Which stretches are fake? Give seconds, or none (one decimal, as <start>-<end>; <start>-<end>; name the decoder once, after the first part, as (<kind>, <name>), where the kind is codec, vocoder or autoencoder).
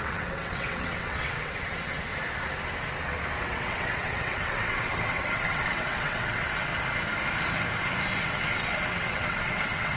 0.0-2.1 (vocoder, WaveNeXt); 3.4-6.7; 8.5-10.0